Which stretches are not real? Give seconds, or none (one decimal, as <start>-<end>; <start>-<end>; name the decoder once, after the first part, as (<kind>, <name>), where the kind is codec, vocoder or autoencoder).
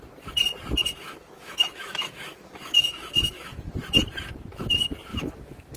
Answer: 0.8-3.7 (autoencoder, DAC-VAE); 5.1-5.8